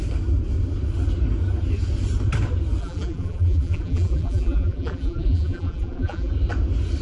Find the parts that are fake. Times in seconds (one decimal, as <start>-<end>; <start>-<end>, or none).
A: 2.8-6.3